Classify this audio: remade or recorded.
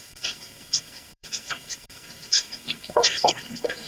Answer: remade